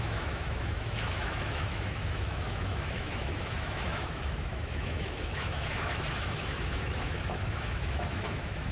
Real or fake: fake